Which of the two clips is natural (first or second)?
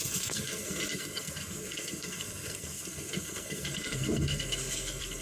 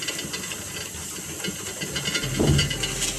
second